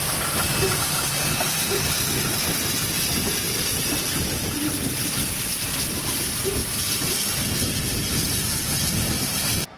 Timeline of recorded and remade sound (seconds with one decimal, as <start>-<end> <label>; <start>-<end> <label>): 0.0-0.5 remade; 0.5-3.6 recorded; 3.6-9.8 remade